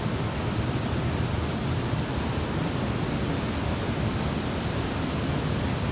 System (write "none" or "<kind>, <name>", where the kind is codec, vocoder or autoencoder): none